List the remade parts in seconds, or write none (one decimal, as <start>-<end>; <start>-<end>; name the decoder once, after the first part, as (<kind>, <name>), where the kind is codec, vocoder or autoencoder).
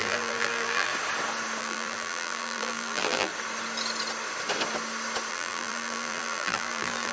0.0-0.9 (vocoder, BigVGAN v2); 1.6-3.3; 5.3-7.1